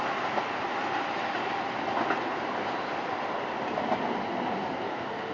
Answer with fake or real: real